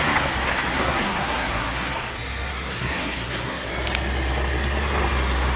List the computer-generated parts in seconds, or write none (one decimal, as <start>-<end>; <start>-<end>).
0.7-1.9; 2.5-3.7